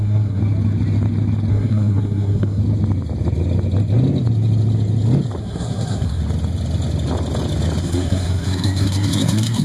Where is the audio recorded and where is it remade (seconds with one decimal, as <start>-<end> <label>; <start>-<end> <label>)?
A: 0.0-0.4 remade; 0.4-1.5 recorded; 1.5-2.6 remade; 2.6-5.4 recorded; 5.4-6.2 remade; 6.2-7.8 recorded; 7.8-9.6 remade